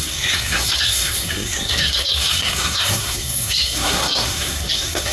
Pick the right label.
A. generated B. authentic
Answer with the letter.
A